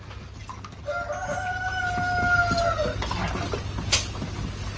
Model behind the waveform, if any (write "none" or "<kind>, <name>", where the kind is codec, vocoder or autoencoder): none